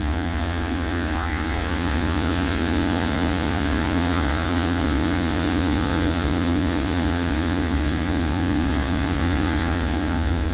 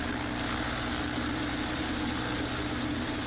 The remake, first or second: first